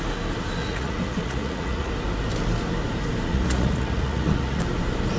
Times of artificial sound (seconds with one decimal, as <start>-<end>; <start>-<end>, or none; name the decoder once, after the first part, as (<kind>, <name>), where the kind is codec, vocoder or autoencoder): 0.6-1.9 (vocoder, Vocos); 3.3-4.6